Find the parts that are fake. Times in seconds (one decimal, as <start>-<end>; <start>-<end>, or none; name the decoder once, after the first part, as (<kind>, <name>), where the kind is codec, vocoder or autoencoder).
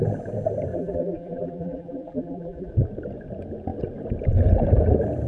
0.7-2.7 (vocoder, BigVGAN v2)